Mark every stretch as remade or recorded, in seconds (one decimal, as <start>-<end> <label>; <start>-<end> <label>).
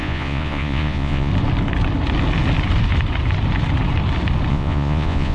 0.0-1.3 remade; 1.3-4.5 recorded; 4.5-5.3 remade